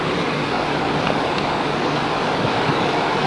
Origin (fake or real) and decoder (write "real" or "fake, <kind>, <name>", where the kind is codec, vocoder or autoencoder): fake, codec, DAC